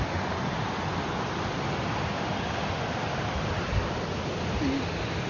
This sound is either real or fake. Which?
real